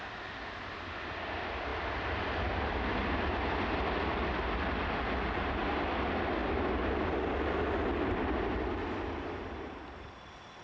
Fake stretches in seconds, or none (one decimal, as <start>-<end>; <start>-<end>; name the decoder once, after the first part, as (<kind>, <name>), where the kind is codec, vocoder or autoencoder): none